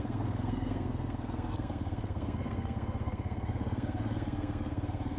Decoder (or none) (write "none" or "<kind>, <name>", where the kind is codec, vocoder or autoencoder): codec, SNAC